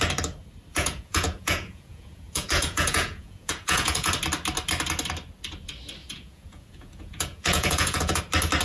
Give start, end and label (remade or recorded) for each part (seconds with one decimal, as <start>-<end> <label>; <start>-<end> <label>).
0.0-0.7 recorded; 0.7-4.1 remade; 4.1-6.0 recorded; 6.0-8.2 remade; 8.2-8.6 recorded